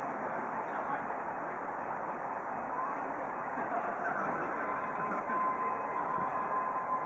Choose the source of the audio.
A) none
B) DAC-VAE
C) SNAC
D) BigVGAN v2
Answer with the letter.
A